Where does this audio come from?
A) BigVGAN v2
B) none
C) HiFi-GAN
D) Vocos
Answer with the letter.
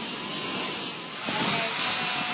B